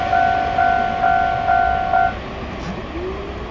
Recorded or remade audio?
recorded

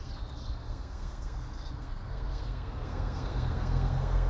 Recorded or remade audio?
remade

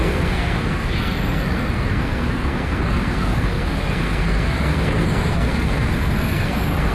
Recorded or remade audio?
remade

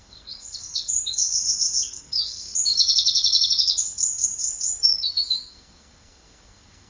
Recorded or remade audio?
remade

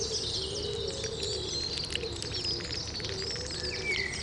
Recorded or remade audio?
recorded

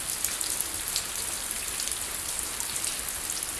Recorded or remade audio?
recorded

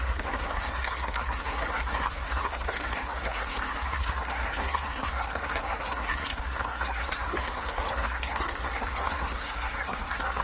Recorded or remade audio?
remade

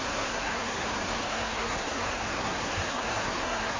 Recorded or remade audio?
remade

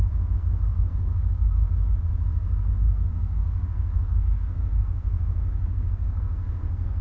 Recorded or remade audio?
remade